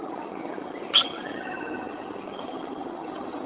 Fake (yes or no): yes